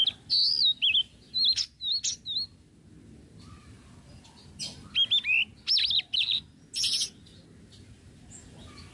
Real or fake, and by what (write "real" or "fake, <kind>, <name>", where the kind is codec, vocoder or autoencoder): real